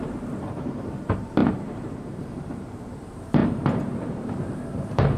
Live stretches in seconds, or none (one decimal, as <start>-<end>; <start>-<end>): none